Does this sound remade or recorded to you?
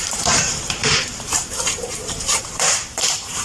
remade